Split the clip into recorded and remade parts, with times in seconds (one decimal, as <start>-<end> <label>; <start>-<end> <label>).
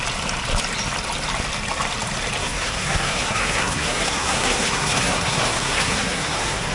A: 0.0-2.4 recorded; 2.4-6.7 remade